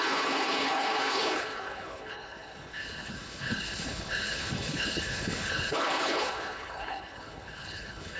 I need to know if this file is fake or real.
fake